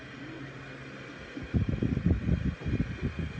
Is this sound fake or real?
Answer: real